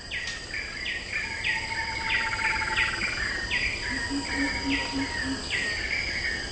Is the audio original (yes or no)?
yes